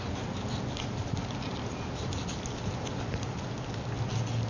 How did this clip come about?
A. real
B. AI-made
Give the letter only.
A